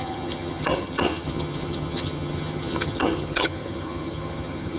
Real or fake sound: fake